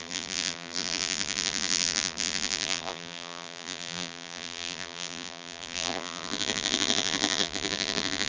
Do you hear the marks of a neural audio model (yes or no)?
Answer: yes